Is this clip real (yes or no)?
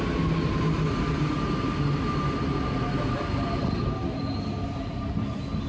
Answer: yes